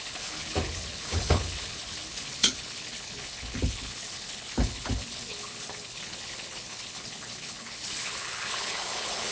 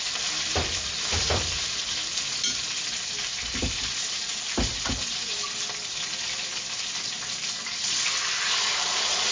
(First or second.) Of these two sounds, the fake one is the first